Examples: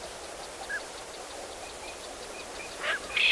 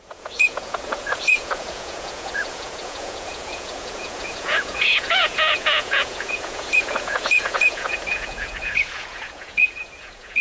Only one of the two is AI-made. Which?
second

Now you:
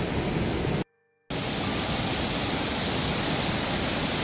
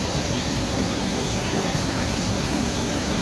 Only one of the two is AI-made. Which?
second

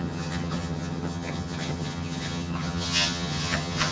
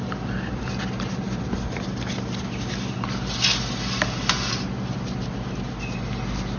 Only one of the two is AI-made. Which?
first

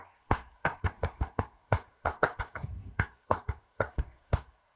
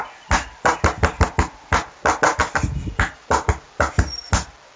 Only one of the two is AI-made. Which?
first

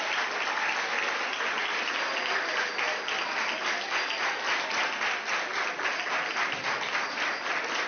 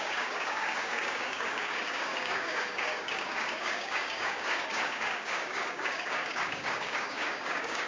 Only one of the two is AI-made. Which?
second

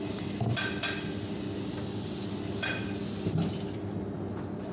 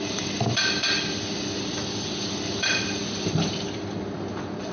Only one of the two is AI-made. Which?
second